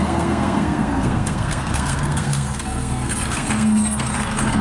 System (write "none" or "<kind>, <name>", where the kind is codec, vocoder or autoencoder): codec, SNAC